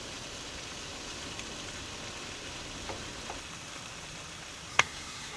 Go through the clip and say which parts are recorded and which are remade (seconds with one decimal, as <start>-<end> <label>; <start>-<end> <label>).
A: 0.0-4.7 recorded; 4.7-5.4 remade